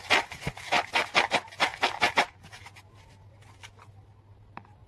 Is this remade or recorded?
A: recorded